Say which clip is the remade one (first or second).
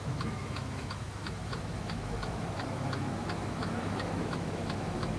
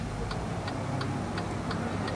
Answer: first